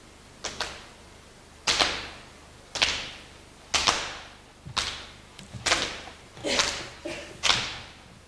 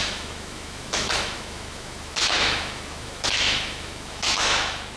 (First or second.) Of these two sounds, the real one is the first